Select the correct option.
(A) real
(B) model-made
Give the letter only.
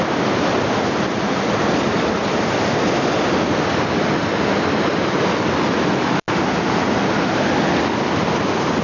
A